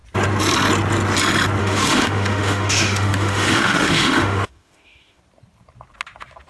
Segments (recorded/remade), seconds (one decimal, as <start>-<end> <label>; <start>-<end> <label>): 0.0-1.6 recorded; 1.6-5.2 remade; 5.2-6.5 recorded